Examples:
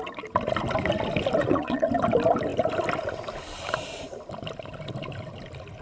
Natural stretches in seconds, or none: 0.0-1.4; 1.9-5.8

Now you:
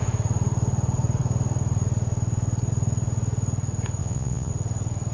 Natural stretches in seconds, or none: 0.0-4.0; 4.5-5.1

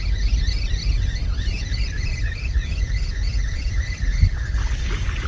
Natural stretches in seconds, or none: 0.0-2.1; 4.0-5.3

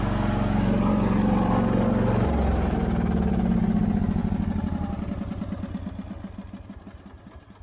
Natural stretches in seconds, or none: 0.0-7.6

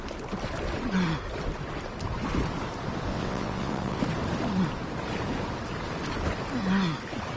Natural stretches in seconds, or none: 0.0-3.1; 4.0-7.4

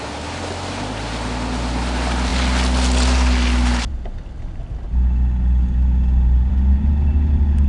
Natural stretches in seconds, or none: 0.0-7.7

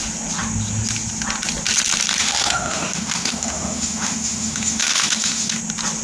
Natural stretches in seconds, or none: 0.0-2.2; 5.6-6.0

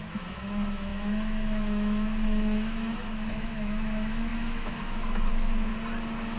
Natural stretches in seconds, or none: 5.7-6.4